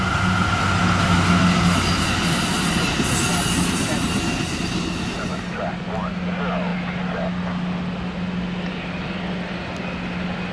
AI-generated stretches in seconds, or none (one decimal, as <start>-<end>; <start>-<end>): none